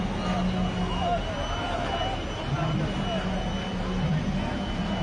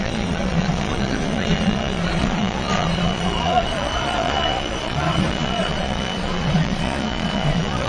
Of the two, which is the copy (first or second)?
second